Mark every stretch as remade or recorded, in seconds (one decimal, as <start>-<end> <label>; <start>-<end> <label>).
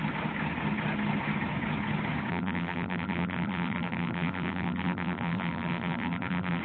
0.0-2.3 recorded; 2.3-6.6 remade